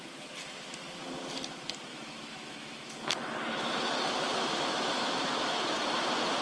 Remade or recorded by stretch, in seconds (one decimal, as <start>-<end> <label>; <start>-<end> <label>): 0.0-1.9 recorded; 1.9-5.6 remade; 5.6-6.4 recorded